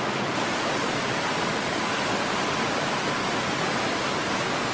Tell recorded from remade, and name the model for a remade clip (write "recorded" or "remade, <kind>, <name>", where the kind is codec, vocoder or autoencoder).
recorded